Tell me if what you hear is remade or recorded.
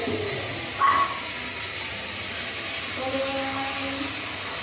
recorded